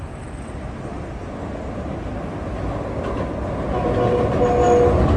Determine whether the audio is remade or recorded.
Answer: recorded